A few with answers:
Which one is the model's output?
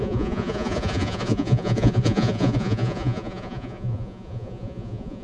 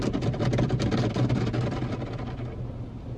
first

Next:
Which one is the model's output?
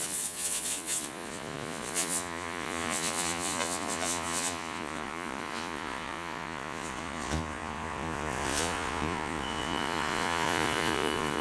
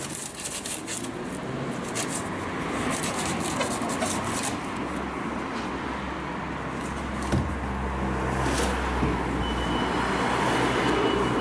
first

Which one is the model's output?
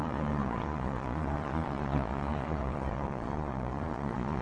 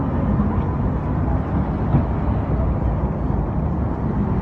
first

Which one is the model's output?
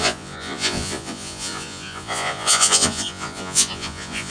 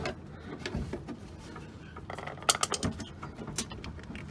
first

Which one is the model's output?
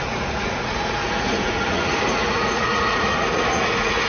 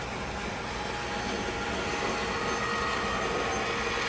first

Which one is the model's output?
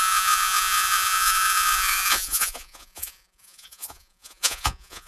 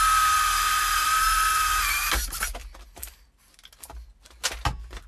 first